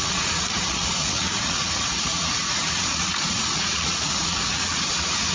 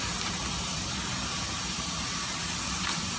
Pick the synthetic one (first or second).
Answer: first